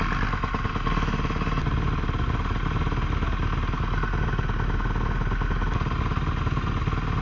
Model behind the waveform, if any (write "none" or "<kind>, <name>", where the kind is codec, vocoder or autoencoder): none